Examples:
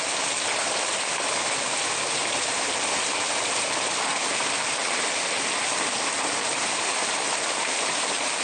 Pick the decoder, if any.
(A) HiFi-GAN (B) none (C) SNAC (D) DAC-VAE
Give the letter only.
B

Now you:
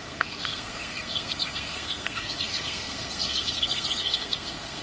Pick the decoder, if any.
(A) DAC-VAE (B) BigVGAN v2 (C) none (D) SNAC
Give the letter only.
D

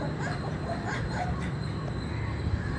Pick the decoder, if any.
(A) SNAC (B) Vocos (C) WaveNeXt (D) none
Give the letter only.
D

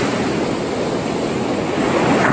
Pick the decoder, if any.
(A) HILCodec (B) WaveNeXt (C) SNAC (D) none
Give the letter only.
D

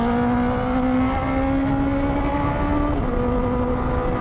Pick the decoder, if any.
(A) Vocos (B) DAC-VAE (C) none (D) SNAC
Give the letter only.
C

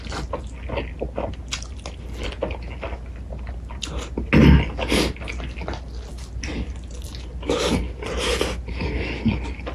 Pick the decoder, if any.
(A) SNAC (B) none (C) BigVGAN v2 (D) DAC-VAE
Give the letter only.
B